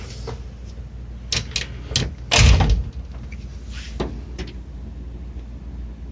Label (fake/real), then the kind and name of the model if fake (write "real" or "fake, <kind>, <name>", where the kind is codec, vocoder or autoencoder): real